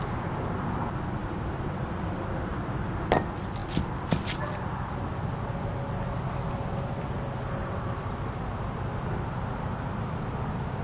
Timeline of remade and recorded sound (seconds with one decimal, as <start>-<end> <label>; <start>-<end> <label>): 0.0-10.8 recorded